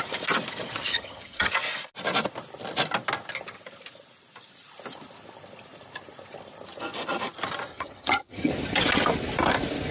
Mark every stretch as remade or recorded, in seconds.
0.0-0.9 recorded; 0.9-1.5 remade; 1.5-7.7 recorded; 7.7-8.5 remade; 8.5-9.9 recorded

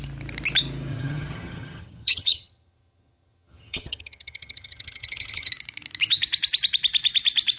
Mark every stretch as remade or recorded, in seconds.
0.0-0.9 recorded; 0.9-5.5 remade; 5.5-7.6 recorded